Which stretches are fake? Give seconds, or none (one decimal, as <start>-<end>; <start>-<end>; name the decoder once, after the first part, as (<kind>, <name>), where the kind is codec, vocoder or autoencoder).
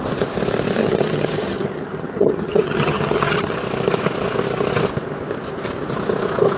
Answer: 0.8-3.5 (vocoder, HiFi-GAN)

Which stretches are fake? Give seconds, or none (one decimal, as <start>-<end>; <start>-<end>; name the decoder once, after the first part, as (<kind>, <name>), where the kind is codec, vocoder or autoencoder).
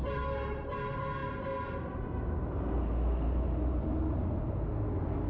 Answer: none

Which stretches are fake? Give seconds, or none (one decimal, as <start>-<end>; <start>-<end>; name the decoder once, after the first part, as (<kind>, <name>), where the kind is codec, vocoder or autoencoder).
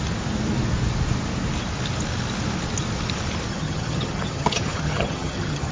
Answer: 3.5-5.7 (vocoder, HiFi-GAN)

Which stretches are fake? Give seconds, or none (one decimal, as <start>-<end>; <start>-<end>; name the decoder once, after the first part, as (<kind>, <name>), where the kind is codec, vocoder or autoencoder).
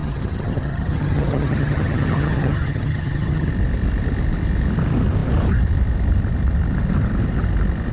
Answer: 0.0-3.5 (vocoder, HiFi-GAN)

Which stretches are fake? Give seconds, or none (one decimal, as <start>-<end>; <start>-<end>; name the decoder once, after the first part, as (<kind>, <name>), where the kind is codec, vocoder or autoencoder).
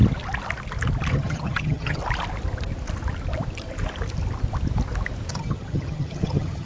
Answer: 1.1-2.0 (vocoder, HiFi-GAN); 5.3-6.7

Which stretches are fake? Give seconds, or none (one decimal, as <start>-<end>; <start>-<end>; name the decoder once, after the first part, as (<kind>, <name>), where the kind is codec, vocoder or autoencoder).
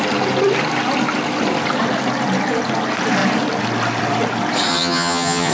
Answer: 4.7-5.5 (vocoder, HiFi-GAN)